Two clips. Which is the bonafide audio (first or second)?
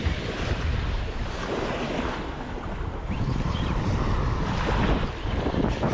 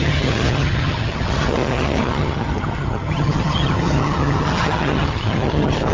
first